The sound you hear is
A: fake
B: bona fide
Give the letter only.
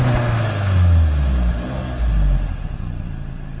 B